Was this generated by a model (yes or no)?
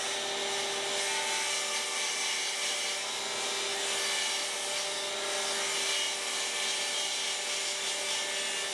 no